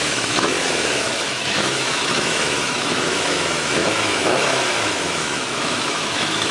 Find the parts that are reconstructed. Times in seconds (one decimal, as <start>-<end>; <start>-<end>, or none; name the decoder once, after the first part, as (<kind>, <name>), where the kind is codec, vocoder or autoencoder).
0.0-6.5 (autoencoder, DAC-VAE)